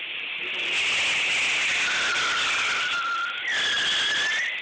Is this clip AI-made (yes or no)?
no